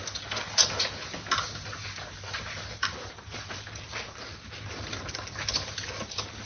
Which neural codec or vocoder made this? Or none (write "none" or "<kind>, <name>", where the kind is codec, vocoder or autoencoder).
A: none